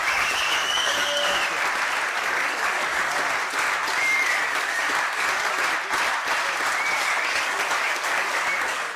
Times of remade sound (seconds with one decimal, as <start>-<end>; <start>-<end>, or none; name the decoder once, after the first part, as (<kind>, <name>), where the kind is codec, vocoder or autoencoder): 0.0-1.4 (codec, DAC); 2.1-3.1; 4.0-5.6; 6.9-9.0